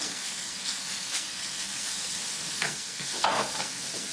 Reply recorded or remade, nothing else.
remade